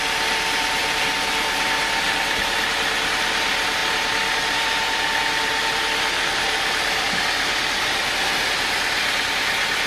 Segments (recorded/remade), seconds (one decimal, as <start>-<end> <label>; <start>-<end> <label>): 0.0-9.9 recorded